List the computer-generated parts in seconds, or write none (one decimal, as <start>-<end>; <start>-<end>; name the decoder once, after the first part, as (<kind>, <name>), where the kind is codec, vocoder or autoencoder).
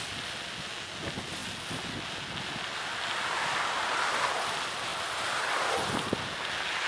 none